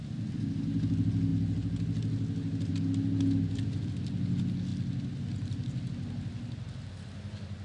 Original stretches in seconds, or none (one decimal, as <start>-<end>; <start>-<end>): 0.0-7.6